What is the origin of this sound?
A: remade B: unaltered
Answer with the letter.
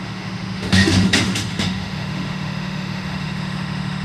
A